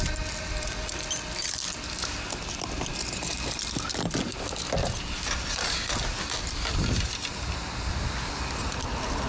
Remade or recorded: recorded